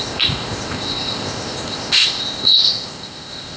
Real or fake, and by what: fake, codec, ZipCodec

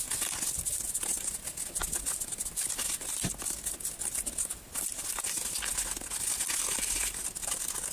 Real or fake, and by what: real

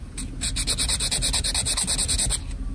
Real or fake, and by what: real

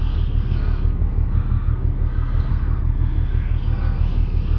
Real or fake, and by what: fake, codec, SNAC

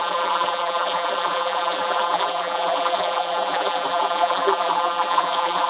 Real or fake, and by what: fake, vocoder, BigVGAN v2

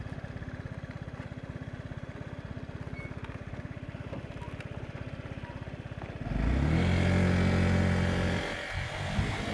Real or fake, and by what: real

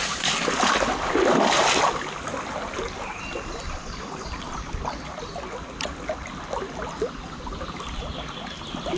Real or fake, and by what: real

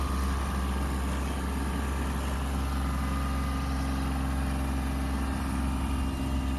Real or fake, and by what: real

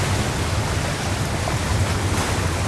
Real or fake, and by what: real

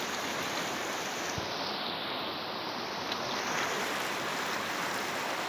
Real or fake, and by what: real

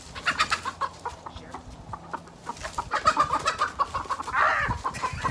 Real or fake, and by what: real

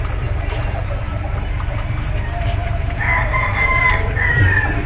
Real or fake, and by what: fake, vocoder, BigVGAN v2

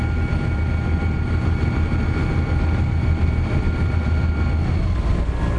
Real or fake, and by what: real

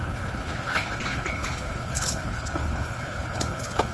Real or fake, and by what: fake, codec, HILCodec